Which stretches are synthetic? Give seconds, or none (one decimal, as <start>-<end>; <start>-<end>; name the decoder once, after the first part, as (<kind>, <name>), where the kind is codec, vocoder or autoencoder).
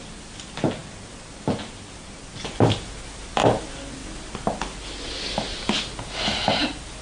none